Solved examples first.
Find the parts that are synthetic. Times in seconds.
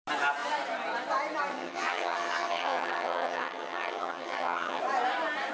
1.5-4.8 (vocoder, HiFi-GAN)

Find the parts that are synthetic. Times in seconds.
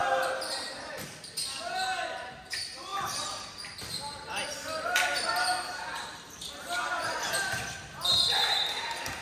0.0-1.1 (vocoder, BigVGAN v2)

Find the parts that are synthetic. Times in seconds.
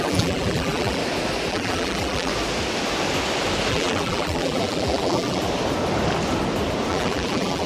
0.0-1.0 (vocoder, BigVGAN v2); 1.5-2.3; 3.7-5.4; 6.9-7.7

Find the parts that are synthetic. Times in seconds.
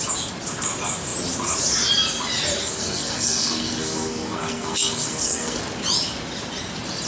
2.6-5.6 (codec, SNAC)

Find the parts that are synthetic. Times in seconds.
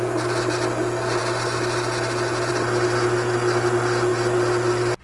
none